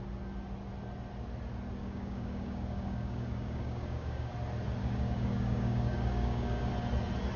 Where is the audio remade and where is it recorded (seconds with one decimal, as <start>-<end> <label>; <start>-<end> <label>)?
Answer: 0.0-1.8 recorded; 1.8-4.3 remade; 4.3-4.8 recorded; 4.8-6.7 remade; 6.7-7.4 recorded